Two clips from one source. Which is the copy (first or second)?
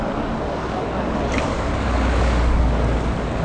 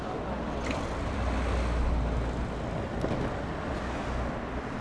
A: first